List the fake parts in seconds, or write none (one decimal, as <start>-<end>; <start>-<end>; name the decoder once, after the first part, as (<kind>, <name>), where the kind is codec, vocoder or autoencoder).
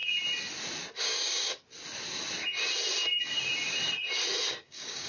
1.0-1.5 (codec, DAC); 4.6-5.1